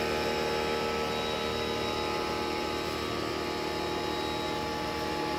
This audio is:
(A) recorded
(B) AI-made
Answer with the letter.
A